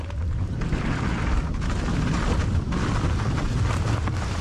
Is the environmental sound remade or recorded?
recorded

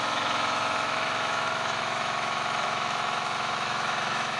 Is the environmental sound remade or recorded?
remade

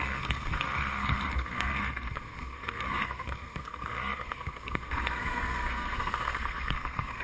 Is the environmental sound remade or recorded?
remade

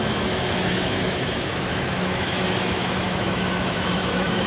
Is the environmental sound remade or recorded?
remade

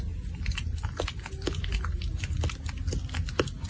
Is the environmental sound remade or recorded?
recorded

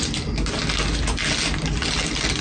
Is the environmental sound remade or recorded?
recorded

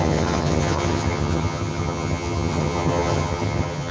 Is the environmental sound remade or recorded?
remade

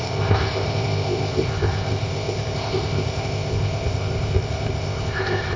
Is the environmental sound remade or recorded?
remade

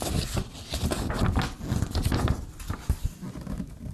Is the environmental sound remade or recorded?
recorded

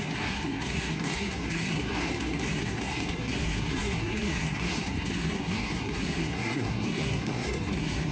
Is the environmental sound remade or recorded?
remade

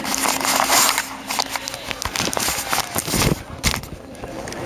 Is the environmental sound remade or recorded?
recorded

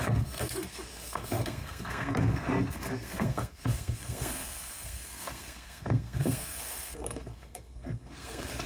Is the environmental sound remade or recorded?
remade